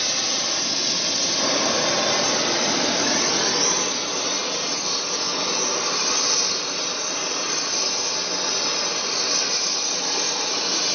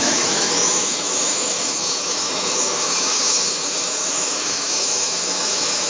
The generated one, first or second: second